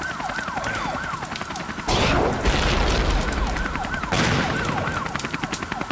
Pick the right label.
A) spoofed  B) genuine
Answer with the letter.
B